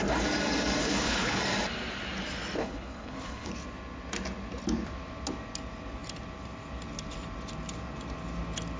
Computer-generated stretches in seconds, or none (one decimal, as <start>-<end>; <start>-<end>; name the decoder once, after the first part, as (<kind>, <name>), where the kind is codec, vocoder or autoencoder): 0.8-1.4 (codec, HILCodec); 2.6-3.5